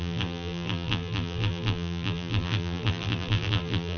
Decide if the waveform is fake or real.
fake